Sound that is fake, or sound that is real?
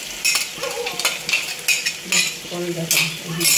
real